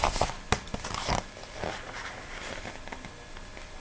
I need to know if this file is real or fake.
real